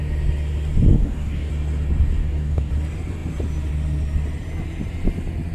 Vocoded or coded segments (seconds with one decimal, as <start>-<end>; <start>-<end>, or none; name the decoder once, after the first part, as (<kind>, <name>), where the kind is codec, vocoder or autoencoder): 0.9-1.5 (codec, DAC); 2.2-2.7